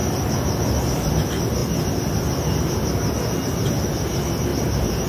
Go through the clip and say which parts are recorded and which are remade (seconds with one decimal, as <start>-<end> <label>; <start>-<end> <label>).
0.0-1.1 remade; 1.1-4.5 recorded; 4.5-5.1 remade